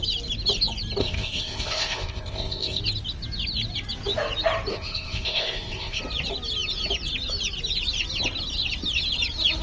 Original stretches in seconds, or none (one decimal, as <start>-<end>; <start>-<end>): 0.0-1.0; 2.8-4.7; 6.0-9.6